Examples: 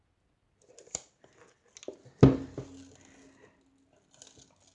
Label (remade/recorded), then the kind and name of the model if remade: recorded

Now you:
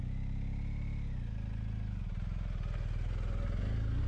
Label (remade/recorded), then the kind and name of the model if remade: recorded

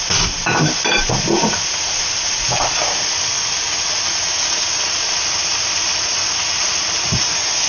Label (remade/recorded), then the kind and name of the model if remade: recorded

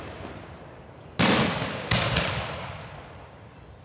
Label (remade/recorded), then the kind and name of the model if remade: recorded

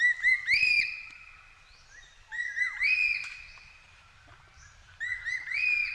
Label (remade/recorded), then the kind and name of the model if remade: recorded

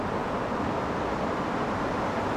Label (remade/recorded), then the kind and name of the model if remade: recorded